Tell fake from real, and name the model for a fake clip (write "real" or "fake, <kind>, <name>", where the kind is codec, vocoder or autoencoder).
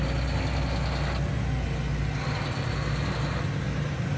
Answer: real